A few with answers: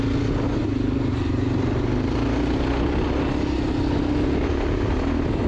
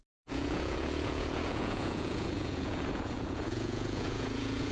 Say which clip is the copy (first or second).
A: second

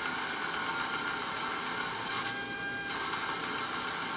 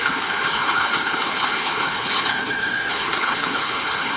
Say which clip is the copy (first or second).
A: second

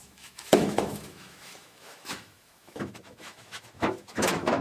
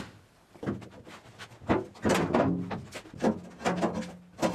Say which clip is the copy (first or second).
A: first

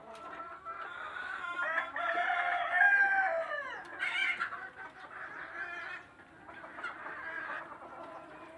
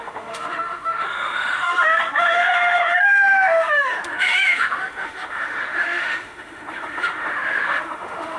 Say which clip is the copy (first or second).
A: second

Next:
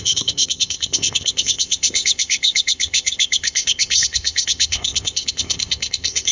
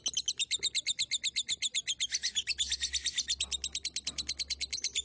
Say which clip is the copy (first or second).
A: first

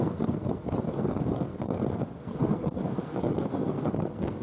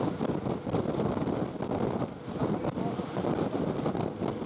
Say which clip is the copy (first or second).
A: first